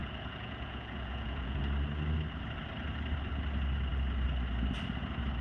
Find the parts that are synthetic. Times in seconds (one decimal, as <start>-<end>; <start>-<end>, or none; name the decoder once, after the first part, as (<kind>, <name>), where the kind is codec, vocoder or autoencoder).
0.0-1.6 (vocoder, Vocos)